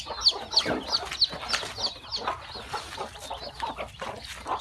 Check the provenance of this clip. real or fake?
real